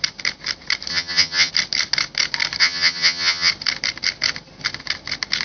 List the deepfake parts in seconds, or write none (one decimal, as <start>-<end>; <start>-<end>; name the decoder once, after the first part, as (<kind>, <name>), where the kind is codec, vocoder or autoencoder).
0.9-1.5 (vocoder, HiFi-GAN); 2.6-3.5